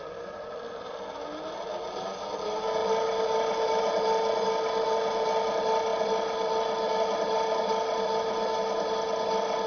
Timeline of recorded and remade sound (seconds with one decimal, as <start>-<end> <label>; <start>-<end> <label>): 0.0-9.7 recorded